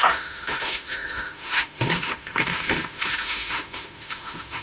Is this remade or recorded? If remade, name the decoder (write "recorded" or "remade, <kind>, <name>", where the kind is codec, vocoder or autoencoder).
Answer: remade, autoencoder, DAC-VAE